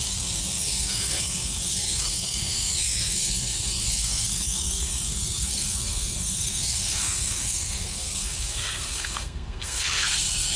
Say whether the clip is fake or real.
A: fake